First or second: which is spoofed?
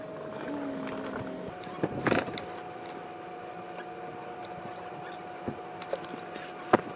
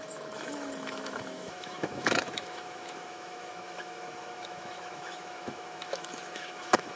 second